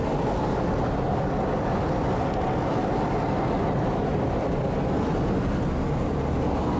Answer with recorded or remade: recorded